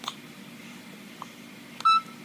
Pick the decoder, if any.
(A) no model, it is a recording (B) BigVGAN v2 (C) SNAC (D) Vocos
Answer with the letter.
A